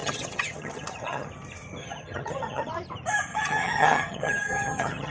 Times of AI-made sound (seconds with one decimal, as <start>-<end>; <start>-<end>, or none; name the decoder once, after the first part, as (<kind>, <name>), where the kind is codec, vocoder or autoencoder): 0.0-1.3 (vocoder, HiFi-GAN); 1.8-2.7; 3.3-5.1